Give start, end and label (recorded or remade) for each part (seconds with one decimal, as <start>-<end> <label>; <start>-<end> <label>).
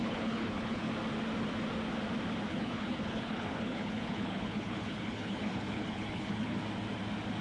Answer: 0.0-0.9 remade; 0.9-2.5 recorded; 2.5-6.6 remade; 6.6-7.4 recorded